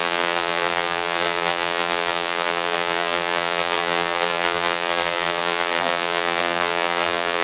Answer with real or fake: fake